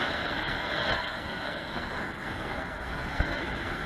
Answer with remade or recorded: remade